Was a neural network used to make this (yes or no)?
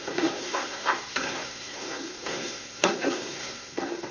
yes